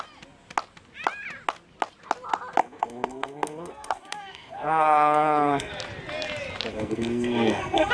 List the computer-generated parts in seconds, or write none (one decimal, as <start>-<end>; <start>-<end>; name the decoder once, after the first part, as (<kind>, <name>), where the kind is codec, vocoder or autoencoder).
2.6-5.7 (codec, SNAC); 6.7-7.9